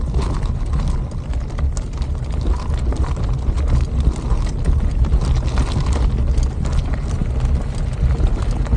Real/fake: real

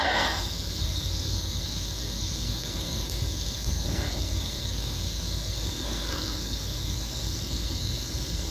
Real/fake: fake